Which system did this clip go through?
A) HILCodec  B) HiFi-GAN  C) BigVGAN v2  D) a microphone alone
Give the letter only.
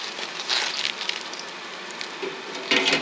D